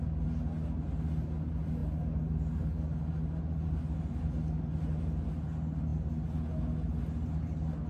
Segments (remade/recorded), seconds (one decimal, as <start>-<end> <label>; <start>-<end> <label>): 0.0-7.9 recorded